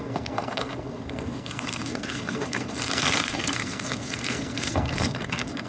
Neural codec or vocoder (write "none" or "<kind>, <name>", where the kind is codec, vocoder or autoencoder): codec, SNAC